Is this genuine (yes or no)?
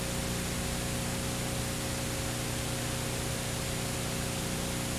yes